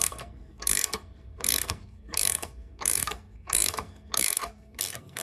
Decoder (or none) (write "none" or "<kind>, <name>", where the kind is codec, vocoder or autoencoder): codec, SNAC